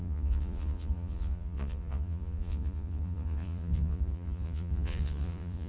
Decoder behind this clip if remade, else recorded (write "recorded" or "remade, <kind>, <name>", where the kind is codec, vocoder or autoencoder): remade, vocoder, Vocos